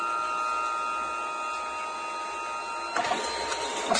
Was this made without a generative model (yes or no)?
yes